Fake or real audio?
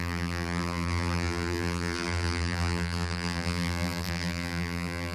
fake